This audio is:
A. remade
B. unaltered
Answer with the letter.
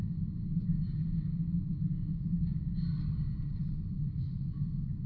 B